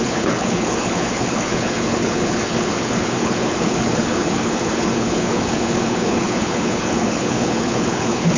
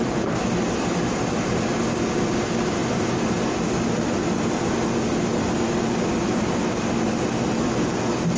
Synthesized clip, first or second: first